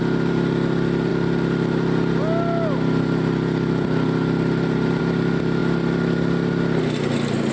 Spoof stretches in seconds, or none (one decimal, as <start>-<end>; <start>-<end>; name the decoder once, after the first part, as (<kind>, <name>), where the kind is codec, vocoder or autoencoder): none